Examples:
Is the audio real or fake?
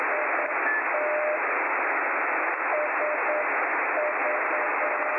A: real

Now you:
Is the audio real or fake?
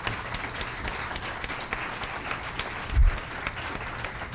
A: real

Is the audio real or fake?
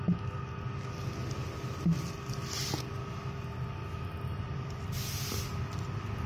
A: real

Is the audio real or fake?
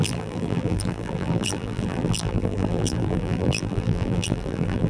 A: fake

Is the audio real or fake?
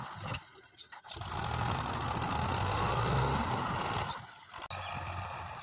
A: real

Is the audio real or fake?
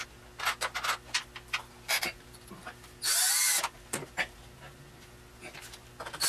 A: real